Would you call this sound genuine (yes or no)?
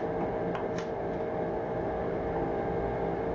yes